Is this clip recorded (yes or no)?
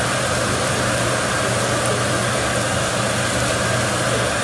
yes